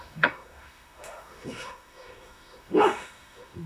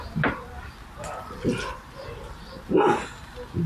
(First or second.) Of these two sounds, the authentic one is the second